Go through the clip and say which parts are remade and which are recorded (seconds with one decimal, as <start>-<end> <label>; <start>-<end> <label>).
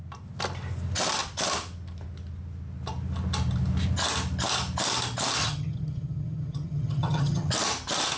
0.0-5.4 recorded; 5.4-7.5 remade; 7.5-8.2 recorded